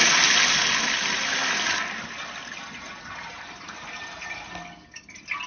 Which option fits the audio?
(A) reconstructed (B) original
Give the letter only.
B